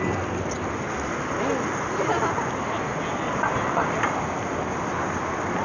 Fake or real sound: real